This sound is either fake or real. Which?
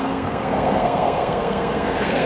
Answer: fake